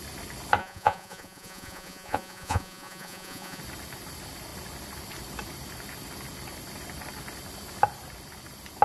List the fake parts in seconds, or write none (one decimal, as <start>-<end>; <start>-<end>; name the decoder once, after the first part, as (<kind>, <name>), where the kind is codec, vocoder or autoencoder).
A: 0.6-3.6 (vocoder, Vocos)